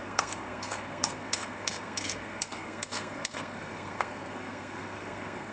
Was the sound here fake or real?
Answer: fake